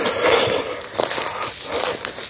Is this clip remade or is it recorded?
recorded